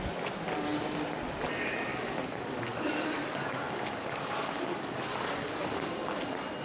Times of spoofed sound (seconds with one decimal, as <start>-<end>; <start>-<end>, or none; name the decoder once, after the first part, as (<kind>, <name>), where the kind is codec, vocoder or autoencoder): 1.9-5.9 (codec, DAC)

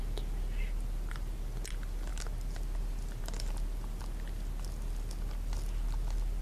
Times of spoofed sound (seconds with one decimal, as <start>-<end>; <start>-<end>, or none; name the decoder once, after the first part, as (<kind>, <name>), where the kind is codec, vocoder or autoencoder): none

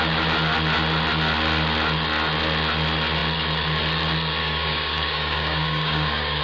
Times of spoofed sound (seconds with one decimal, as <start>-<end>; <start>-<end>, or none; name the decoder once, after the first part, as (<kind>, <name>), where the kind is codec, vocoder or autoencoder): 4.4-6.4 (codec, DAC)

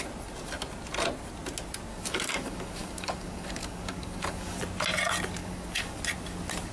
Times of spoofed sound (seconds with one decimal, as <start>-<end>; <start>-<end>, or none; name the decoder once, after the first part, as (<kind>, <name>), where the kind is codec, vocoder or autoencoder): 1.9-4.6 (codec, DAC); 5.4-6.0

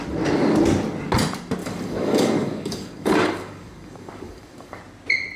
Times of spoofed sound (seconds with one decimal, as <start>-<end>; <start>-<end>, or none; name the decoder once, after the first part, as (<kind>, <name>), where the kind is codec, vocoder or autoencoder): 1.6-4.8 (codec, DAC)

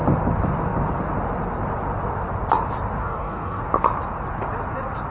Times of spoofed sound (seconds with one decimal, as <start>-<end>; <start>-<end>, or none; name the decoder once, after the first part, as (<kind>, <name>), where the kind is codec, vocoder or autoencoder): 3.0-3.6 (codec, DAC)